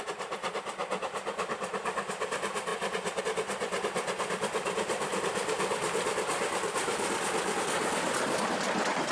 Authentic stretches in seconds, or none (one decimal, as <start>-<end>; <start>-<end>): 2.7-3.2